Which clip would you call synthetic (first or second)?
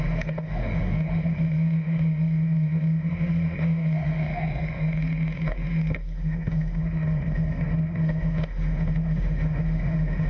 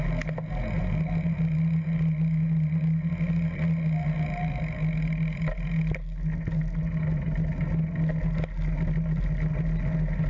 first